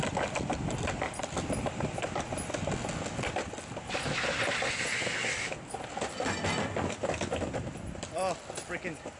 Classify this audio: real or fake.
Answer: real